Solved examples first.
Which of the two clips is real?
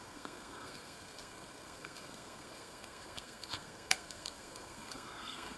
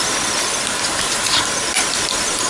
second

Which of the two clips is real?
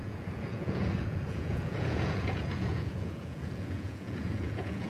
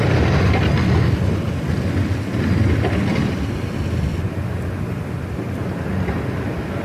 second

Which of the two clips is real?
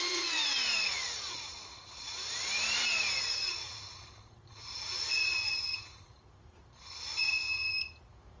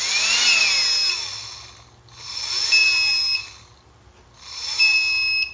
second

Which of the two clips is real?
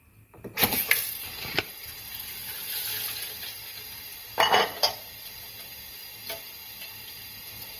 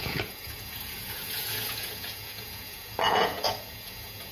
first